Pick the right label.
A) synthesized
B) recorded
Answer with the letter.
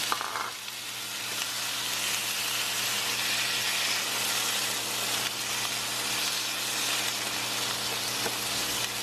B